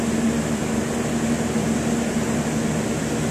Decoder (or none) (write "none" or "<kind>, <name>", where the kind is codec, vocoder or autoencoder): none